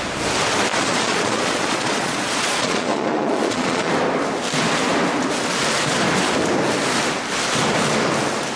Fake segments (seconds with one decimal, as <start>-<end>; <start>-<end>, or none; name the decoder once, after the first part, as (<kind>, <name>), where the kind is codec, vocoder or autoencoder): 0.7-3.9 (vocoder, Vocos)